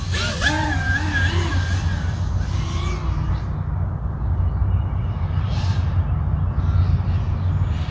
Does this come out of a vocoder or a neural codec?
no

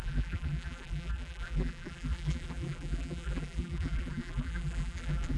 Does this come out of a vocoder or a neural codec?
yes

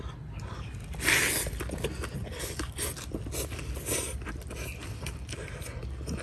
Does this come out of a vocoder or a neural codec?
no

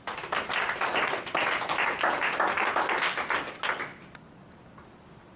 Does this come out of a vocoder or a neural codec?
no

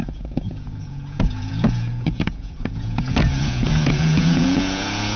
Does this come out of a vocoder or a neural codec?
yes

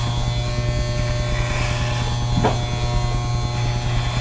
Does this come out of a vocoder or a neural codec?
no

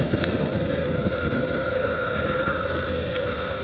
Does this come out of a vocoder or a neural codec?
yes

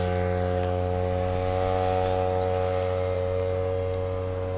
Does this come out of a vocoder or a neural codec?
no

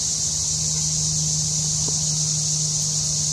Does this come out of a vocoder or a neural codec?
no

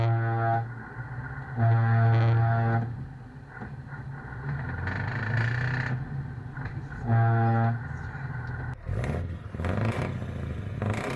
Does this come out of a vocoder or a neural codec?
no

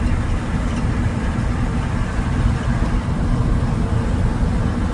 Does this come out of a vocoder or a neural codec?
no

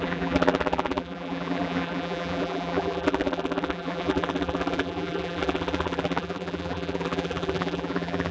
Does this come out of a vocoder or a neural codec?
yes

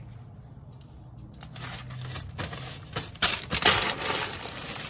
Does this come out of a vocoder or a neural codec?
no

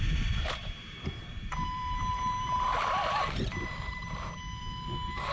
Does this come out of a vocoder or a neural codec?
yes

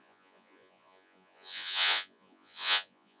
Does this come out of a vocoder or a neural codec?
yes